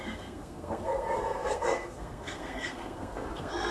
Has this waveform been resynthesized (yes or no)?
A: yes